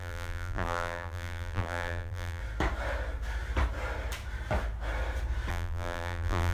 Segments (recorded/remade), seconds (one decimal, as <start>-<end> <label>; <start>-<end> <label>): 0.0-2.4 remade; 2.4-5.5 recorded; 5.5-6.5 remade

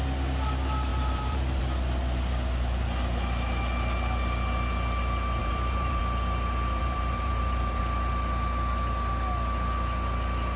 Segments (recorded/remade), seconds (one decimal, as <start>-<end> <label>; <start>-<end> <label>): 0.0-0.9 recorded; 0.9-1.6 remade; 1.6-5.4 recorded; 5.4-6.0 remade; 6.0-6.8 recorded; 6.8-7.8 remade; 7.8-10.6 recorded